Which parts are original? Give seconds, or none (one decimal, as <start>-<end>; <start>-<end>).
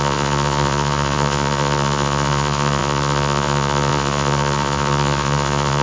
none